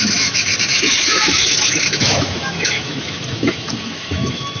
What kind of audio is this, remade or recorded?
remade